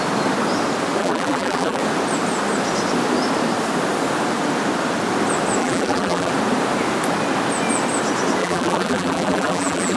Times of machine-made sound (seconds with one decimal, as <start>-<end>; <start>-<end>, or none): 1.0-1.8; 5.6-6.3; 8.4-10.0